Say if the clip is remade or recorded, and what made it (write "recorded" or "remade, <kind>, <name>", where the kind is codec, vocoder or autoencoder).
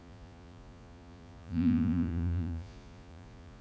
remade, vocoder, Vocos